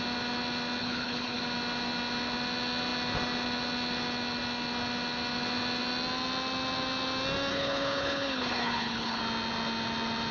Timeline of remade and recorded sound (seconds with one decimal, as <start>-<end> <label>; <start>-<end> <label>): 0.0-0.8 recorded; 0.8-1.4 remade; 1.4-7.5 recorded; 7.5-9.2 remade; 9.2-10.3 recorded